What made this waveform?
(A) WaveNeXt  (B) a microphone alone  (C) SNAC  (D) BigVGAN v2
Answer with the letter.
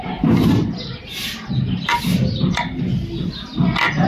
B